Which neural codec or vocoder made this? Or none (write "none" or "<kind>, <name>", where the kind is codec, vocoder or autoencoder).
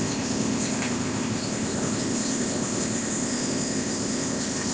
codec, ZipCodec